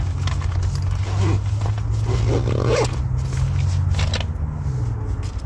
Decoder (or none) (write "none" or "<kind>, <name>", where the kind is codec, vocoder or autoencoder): none